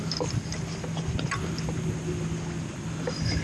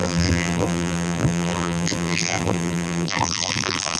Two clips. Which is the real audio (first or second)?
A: first